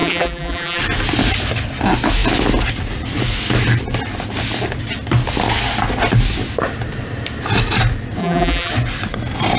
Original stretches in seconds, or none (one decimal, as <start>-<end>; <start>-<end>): 0.8-8.2; 8.7-9.6